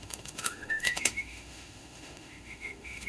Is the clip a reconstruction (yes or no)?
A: yes